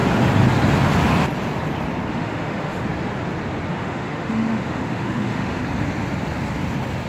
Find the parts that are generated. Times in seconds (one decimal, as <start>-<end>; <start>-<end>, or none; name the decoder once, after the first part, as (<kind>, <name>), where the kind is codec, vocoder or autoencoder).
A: 2.1-2.8 (autoencoder, DAC-VAE); 3.7-5.6

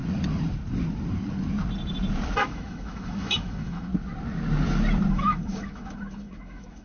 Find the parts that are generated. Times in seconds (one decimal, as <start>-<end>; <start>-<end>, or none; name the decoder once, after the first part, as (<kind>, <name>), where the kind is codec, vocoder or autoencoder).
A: 2.4-3.9 (autoencoder, DAC-VAE); 5.1-6.8

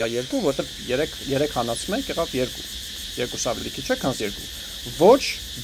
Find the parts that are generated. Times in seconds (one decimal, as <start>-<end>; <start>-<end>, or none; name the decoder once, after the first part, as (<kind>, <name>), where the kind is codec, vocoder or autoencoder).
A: 0.0-0.6 (autoencoder, DAC-VAE)

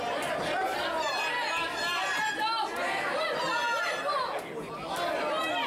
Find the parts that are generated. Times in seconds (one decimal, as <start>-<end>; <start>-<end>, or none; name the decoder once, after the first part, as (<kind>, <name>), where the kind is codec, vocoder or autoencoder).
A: none

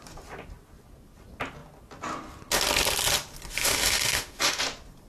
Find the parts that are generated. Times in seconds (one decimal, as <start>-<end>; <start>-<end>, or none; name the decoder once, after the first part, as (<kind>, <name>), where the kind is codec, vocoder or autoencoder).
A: 3.6-4.6 (autoencoder, DAC-VAE)

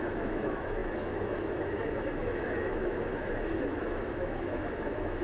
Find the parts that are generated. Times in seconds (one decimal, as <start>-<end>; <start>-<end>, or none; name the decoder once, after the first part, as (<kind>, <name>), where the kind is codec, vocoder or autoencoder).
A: 0.0-5.2 (autoencoder, DAC-VAE)

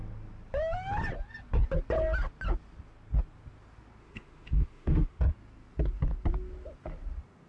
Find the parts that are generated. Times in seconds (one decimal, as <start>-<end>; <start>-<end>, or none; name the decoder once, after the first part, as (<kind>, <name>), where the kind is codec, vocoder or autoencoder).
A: 4.0-5.2 (autoencoder, DAC-VAE)

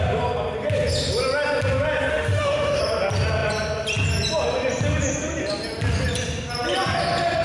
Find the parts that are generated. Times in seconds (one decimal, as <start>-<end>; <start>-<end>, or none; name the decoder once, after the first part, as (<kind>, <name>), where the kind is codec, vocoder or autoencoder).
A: 2.1-2.8 (autoencoder, DAC-VAE)